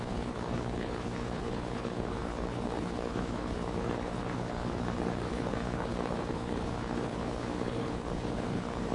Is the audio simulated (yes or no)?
yes